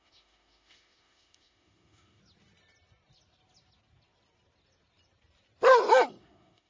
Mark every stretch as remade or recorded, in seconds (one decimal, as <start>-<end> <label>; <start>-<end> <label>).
0.0-2.2 remade; 2.2-6.2 recorded; 6.2-6.7 remade